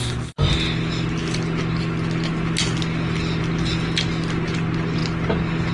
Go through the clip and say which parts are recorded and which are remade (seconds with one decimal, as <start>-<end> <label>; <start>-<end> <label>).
0.0-5.7 recorded